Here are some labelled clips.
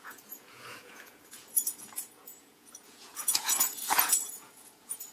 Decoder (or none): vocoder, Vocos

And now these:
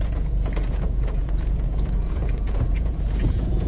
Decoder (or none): vocoder, Vocos